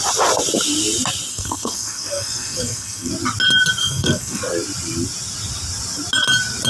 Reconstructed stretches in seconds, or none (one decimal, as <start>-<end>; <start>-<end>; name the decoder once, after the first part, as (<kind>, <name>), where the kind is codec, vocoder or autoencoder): 1.3-3.1 (codec, SNAC); 3.8-4.4